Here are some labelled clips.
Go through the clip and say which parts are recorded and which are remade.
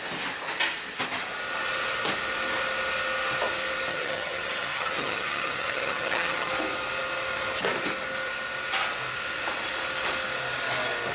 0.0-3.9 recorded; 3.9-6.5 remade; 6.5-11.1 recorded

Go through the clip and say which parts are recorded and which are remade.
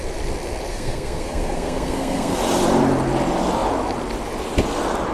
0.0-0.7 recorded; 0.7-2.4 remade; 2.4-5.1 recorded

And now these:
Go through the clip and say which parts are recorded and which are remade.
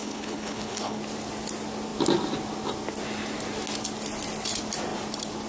0.0-1.0 remade; 1.0-5.5 recorded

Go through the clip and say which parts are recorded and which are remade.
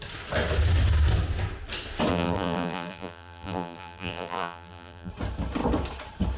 0.0-2.1 recorded; 2.1-5.1 remade; 5.1-6.4 recorded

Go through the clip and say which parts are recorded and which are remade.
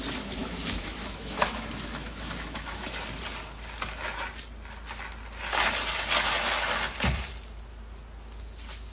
0.0-0.4 recorded; 0.4-2.8 remade; 2.8-8.9 recorded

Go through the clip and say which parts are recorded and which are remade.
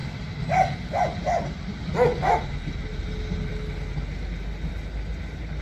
0.0-5.6 recorded